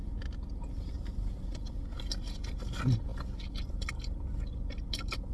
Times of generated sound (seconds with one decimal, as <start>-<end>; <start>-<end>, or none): none

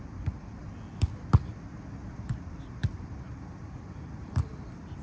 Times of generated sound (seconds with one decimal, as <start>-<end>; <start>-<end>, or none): 0.0-0.6; 2.2-5.0

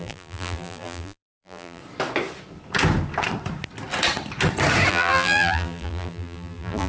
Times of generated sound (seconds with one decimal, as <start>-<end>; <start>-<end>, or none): 0.0-1.8; 4.9-6.9

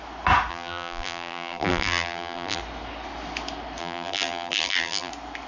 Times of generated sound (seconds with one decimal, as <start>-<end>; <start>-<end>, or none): 0.5-2.6; 3.8-5.1

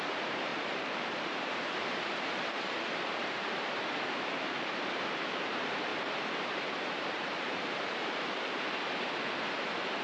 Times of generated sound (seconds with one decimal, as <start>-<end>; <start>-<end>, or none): 0.0-10.0